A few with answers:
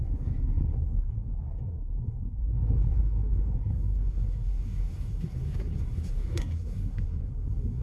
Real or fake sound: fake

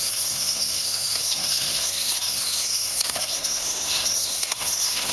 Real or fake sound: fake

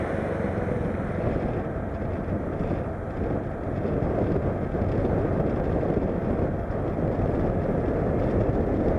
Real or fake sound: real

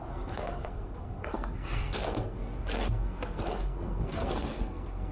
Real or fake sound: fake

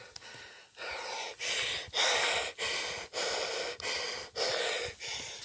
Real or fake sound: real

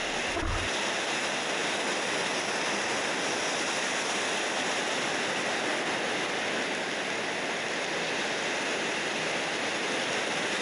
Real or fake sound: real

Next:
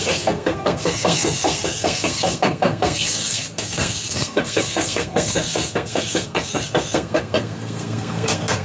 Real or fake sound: fake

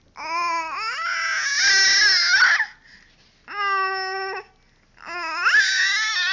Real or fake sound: real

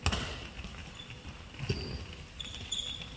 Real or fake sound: real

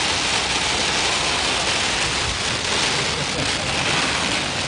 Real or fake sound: real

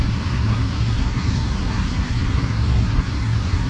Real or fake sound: fake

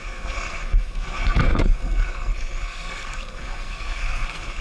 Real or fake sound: fake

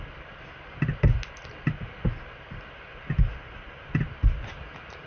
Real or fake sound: real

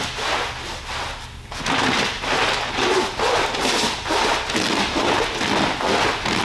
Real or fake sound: real